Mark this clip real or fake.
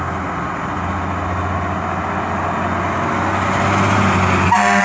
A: real